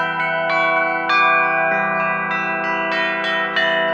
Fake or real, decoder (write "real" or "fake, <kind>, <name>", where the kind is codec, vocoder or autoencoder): real